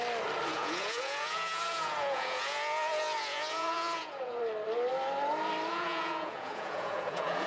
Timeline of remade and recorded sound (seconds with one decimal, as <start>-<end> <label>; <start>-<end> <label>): 0.0-0.5 recorded; 0.5-4.4 remade; 4.4-5.7 recorded; 5.7-7.5 remade